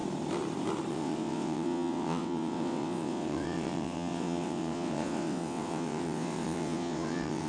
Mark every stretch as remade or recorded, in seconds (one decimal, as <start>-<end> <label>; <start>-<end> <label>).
0.0-0.9 recorded; 0.9-7.5 remade

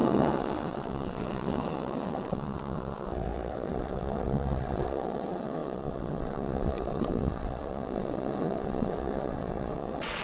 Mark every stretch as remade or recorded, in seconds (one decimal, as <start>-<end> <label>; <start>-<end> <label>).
0.0-10.2 remade

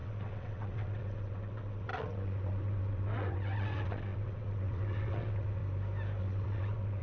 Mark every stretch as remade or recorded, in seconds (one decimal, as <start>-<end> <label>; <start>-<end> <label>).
0.0-5.6 remade; 5.6-6.2 recorded; 6.2-7.0 remade

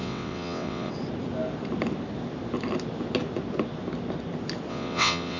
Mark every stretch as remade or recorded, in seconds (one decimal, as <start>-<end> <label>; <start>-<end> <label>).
0.0-0.9 remade; 0.9-4.7 recorded; 4.7-5.4 remade